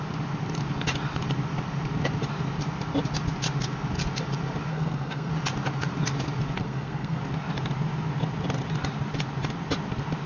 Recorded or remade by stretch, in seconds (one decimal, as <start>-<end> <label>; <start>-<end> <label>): 0.0-4.7 recorded; 4.7-5.3 remade; 5.3-6.6 recorded; 6.6-7.2 remade; 7.2-10.3 recorded